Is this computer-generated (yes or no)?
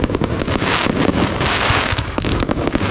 yes